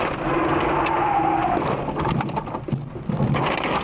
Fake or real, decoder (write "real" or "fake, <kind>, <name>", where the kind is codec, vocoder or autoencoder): real